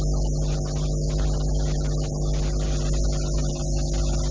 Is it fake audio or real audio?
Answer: real